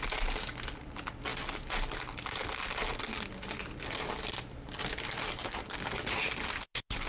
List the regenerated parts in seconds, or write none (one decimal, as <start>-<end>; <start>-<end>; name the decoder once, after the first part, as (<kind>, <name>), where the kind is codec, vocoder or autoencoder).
none